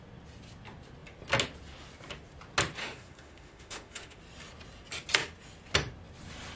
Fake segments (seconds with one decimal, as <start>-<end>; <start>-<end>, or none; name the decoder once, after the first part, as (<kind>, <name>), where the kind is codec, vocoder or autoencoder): 2.8-4.2 (autoencoder, DAC-VAE)